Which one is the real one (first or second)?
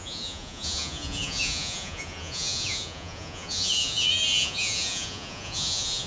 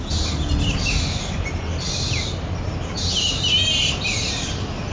second